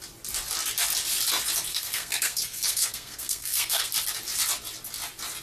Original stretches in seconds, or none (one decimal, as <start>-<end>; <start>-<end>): 0.0-1.7; 3.9-5.4